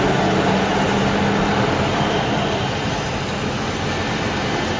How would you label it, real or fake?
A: real